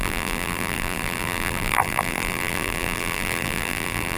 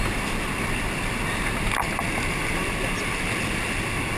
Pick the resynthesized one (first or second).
first